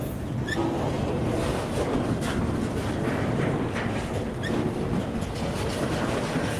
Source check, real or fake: real